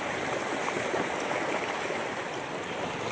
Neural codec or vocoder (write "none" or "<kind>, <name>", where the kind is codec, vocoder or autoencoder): none